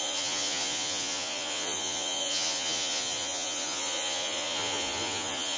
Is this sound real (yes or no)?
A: no